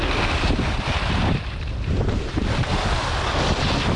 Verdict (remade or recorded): recorded